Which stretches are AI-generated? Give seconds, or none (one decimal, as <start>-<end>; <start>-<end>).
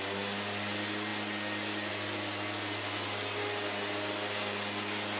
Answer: none